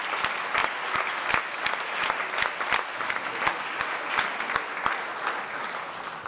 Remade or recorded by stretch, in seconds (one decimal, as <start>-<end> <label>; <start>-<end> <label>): 0.0-6.3 recorded